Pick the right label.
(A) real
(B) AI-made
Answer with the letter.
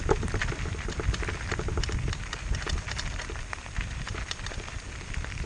B